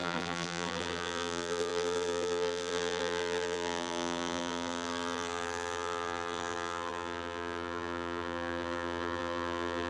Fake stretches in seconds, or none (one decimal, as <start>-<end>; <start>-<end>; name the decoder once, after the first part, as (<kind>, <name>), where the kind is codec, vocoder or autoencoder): 0.0-9.9 (vocoder, BigVGAN v2)